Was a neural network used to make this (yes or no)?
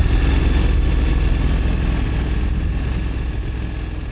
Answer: no